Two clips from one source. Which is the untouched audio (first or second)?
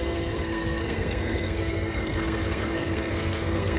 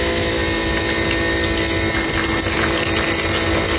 second